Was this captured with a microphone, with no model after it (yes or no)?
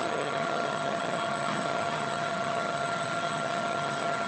no